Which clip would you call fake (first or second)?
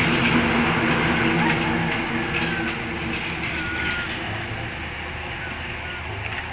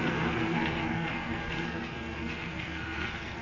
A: second